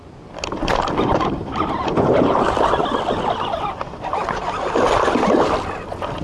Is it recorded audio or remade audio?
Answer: recorded